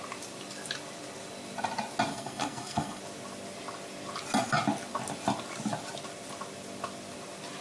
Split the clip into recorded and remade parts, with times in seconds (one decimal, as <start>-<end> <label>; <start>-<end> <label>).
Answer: 0.0-2.1 recorded; 2.1-3.0 remade; 3.0-7.6 recorded